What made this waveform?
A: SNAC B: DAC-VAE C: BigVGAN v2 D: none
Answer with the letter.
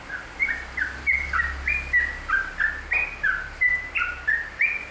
D